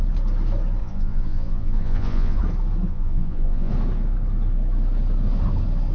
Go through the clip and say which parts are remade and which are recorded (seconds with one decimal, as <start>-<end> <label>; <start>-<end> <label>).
0.0-0.8 recorded; 0.8-2.4 remade; 2.4-2.9 recorded; 2.9-3.7 remade; 3.7-5.9 recorded